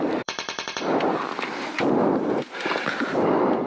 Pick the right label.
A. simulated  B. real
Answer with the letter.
A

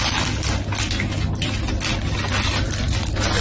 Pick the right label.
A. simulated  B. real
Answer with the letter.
B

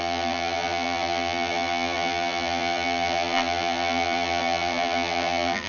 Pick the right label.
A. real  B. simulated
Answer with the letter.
B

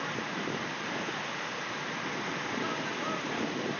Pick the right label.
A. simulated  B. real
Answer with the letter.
B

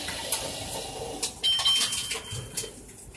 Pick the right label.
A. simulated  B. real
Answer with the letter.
B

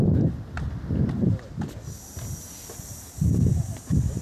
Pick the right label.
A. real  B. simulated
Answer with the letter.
A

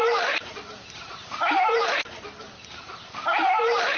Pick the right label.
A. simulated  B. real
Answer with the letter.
A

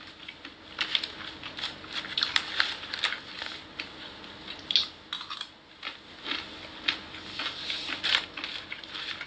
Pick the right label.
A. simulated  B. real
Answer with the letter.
B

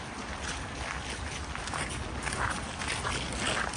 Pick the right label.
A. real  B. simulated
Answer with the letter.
A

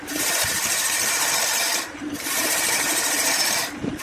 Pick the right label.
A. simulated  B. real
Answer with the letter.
A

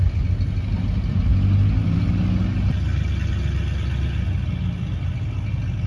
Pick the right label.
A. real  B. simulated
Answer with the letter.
A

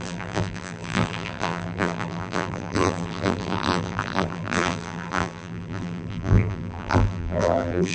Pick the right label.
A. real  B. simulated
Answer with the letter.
B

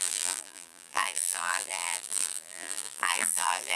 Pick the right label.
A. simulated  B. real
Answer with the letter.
A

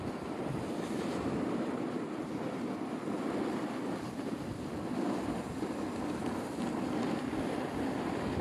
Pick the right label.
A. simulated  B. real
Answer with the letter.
B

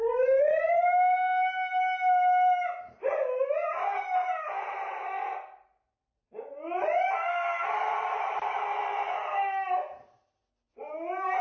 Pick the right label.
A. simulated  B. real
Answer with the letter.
B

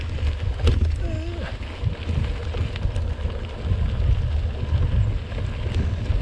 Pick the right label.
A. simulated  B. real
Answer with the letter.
B